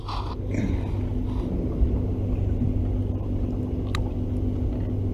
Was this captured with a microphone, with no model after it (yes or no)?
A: yes